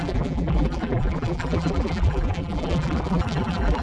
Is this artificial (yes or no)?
yes